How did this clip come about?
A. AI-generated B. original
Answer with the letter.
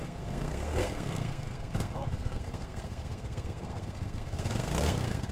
A